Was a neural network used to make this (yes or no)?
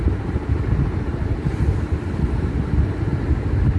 no